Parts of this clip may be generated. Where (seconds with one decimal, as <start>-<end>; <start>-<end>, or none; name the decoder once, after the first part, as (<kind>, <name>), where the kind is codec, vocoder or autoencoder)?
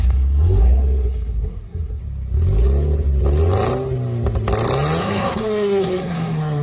0.0-2.0 (codec, SNAC); 5.0-6.6